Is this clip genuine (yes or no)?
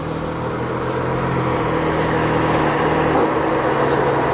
yes